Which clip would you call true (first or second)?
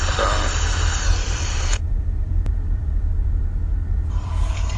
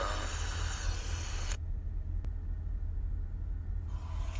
second